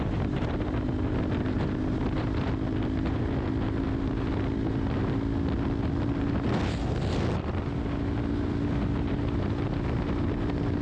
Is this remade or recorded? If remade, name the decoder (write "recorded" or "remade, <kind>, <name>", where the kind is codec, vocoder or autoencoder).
recorded